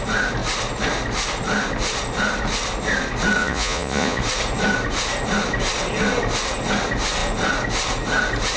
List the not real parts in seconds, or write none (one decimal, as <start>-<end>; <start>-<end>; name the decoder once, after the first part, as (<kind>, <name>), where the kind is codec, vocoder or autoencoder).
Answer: 3.4-4.2 (vocoder, Vocos)